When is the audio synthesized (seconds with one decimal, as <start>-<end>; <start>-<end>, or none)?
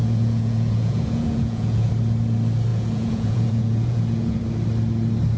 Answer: 0.0-1.9; 2.7-4.4